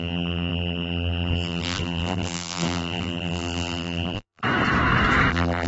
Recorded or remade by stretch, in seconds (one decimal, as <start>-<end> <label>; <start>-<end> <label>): 0.0-4.4 remade; 4.4-5.3 recorded; 5.3-5.7 remade